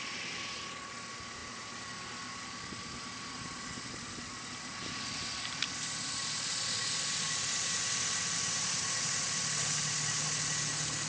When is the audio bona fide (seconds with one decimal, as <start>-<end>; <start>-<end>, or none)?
0.0-11.1